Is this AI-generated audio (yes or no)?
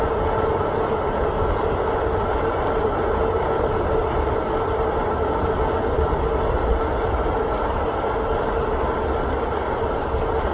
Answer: no